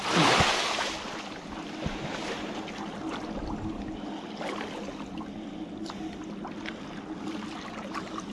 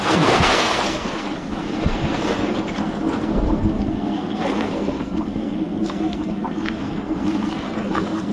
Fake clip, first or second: second